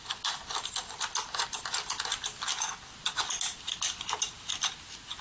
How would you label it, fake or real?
real